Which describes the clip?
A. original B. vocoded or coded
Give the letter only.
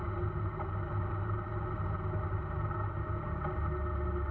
A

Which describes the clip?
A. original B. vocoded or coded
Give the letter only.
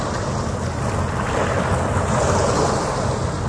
A